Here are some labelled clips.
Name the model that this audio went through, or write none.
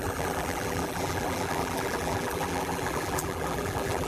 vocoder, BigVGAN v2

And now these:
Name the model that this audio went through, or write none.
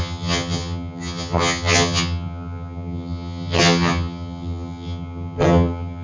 vocoder, HiFi-GAN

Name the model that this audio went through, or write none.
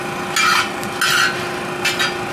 none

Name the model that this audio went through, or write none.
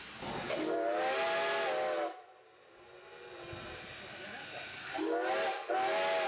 none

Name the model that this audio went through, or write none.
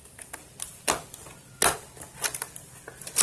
none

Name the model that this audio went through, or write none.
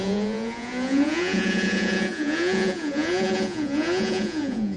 vocoder, Vocos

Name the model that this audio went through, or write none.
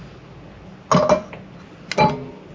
none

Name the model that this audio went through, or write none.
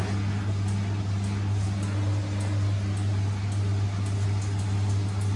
none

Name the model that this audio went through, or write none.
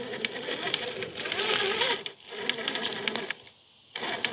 none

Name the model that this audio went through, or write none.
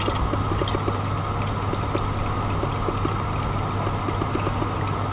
none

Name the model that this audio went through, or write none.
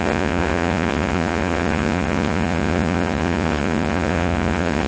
vocoder, Vocos